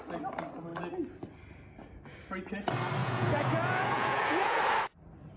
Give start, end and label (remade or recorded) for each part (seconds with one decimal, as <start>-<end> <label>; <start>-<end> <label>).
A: 0.0-3.0 recorded; 3.0-4.6 remade; 4.6-5.4 recorded